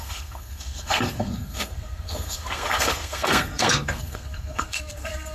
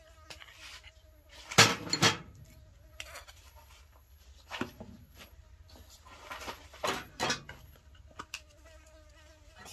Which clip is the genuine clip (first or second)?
second